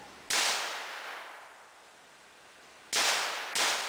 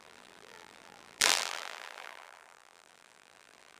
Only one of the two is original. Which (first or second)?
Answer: first